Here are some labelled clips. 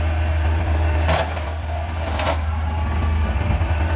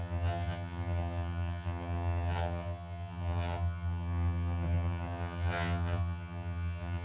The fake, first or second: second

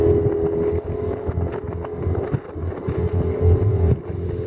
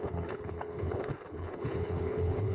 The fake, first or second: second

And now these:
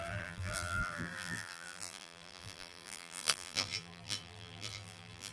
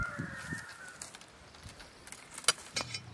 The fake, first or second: first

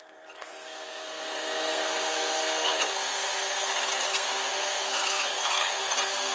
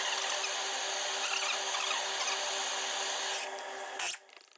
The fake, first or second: first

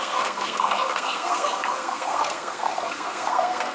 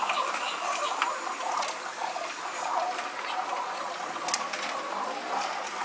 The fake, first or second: first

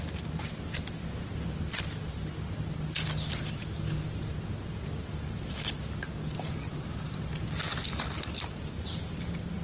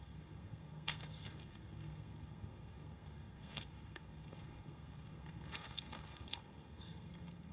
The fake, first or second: second